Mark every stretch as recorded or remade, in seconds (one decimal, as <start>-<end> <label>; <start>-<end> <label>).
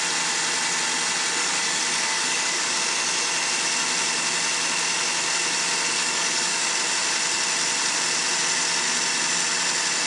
0.0-1.4 recorded; 1.4-2.8 remade; 2.8-6.0 recorded; 6.0-6.7 remade; 6.7-10.1 recorded